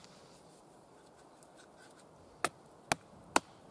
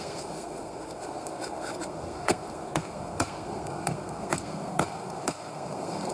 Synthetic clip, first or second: second